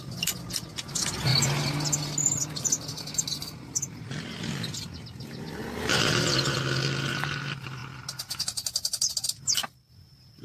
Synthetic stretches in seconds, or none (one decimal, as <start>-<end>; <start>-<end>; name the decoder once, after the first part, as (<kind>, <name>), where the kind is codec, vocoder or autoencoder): none